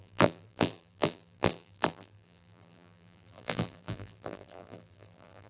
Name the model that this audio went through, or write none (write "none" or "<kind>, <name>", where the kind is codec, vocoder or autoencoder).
vocoder, BigVGAN v2